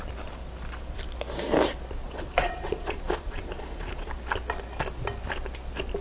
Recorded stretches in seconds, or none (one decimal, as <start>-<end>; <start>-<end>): 0.0-2.0; 4.1-6.0